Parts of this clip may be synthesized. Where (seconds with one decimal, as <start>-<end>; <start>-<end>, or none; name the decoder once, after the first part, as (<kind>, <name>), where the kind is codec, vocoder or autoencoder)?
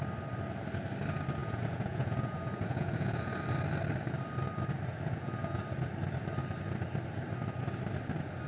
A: 1.4-3.4 (vocoder, Vocos); 4.9-5.6